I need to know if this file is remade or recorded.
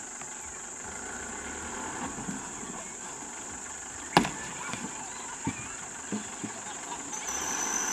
recorded